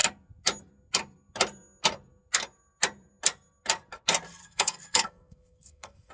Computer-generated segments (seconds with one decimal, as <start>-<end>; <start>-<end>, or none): 4.4-6.1